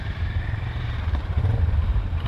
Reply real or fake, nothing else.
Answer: fake